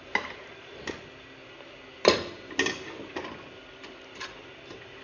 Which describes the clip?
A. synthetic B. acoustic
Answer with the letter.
B